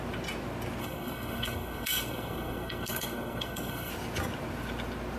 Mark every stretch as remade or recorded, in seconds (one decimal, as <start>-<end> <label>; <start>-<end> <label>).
0.0-0.8 recorded; 0.8-3.9 remade; 3.9-5.2 recorded